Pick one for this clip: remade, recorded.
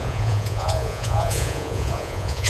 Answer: remade